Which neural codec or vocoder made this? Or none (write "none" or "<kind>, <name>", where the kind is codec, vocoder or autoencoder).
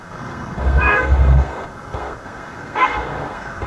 codec, SNAC